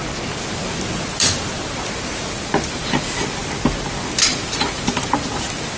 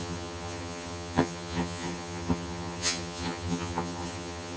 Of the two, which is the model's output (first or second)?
second